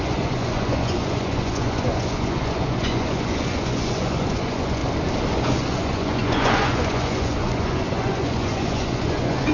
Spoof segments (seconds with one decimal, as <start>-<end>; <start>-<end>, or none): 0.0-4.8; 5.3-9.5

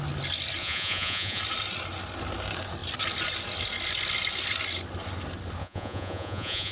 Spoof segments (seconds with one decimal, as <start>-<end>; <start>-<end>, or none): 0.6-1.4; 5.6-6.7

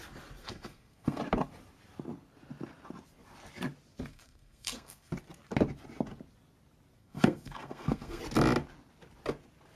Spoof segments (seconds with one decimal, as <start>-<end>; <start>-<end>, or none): 0.4-1.2; 4.1-5.1; 7.0-8.2